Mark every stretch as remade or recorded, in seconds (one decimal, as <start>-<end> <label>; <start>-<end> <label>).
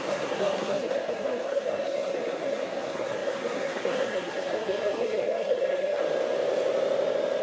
0.0-6.0 remade; 6.0-7.4 recorded